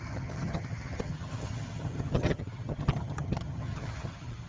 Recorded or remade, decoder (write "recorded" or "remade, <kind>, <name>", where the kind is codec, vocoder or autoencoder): remade, vocoder, HiFi-GAN